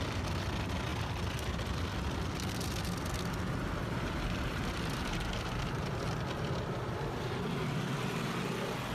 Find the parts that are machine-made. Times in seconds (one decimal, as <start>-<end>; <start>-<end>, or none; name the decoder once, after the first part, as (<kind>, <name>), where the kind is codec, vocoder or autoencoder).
3.8-6.0 (vocoder, BigVGAN v2)